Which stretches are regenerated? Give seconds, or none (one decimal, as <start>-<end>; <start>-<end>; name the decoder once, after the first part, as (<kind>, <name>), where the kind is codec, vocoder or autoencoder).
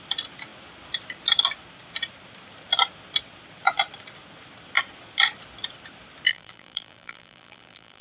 6.3-8.0 (vocoder, BigVGAN v2)